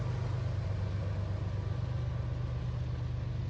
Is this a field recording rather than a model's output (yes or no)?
yes